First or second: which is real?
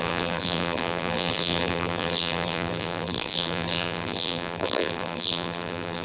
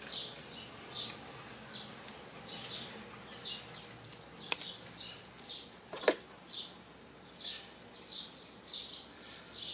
second